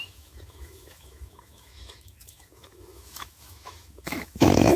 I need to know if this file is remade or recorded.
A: remade